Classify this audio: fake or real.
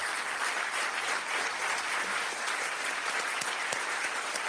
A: real